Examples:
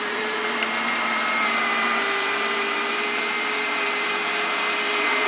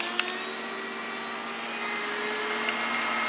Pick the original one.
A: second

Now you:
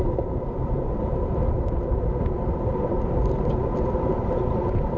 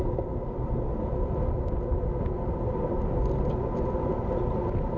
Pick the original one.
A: second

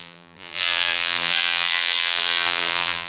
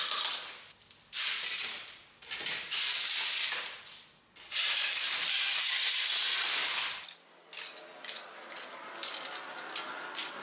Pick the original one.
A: second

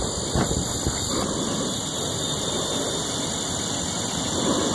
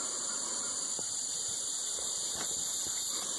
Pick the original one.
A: first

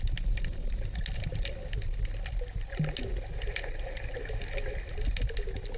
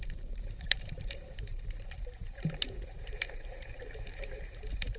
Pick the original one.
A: first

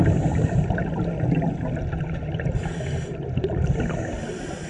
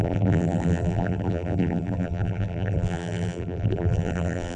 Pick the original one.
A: first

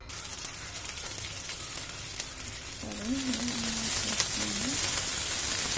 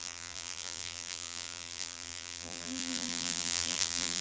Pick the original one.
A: first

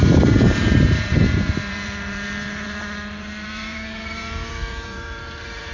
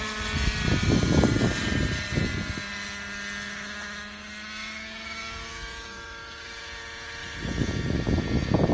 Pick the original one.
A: second